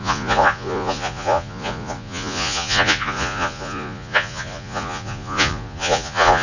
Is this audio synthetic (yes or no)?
yes